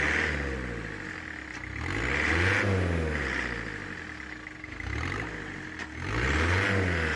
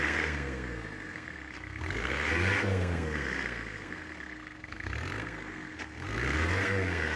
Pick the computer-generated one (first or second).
second